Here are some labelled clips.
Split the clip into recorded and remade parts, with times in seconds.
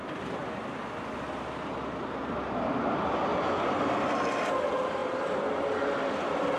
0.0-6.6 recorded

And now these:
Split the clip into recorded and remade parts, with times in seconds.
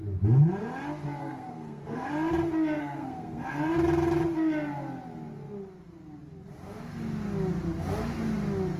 0.0-1.2 recorded; 1.2-2.1 remade; 2.1-2.8 recorded; 2.8-3.7 remade; 3.7-8.8 recorded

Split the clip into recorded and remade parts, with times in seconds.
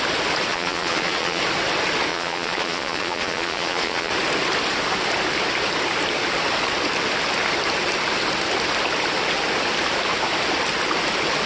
0.0-0.5 recorded; 0.5-1.4 remade; 1.4-2.1 recorded; 2.1-4.1 remade; 4.1-11.5 recorded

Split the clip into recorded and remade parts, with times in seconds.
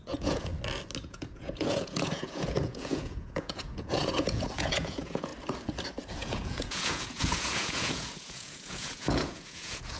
0.0-0.5 remade; 0.5-1.0 recorded; 1.0-5.3 remade; 5.3-6.1 recorded; 6.1-10.0 remade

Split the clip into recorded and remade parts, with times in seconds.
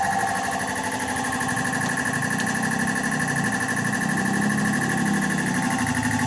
0.0-6.3 recorded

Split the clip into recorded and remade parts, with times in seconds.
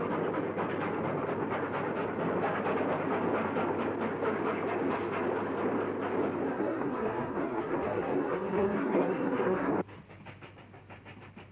0.0-6.5 recorded; 6.5-9.7 remade; 9.7-11.5 recorded